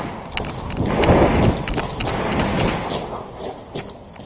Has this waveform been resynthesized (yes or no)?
no